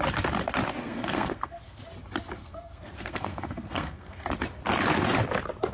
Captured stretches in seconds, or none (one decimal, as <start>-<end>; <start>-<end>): 0.0-0.8; 1.8-2.4; 4.3-5.7